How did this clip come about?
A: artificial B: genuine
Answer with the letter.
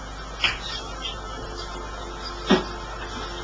B